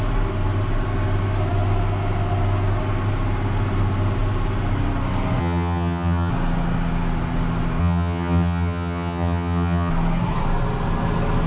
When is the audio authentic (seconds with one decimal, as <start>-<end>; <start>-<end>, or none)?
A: 0.0-5.4; 6.3-7.8; 9.9-11.5